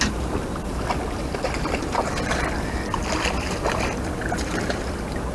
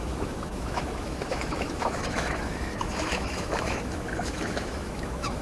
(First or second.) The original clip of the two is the first